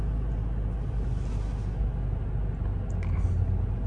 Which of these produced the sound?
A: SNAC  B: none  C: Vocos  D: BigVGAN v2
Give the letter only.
B